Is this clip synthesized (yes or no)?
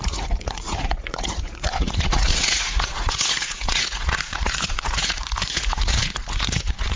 yes